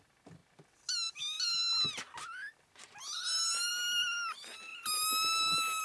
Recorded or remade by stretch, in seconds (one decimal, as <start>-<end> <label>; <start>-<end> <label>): 0.0-5.8 recorded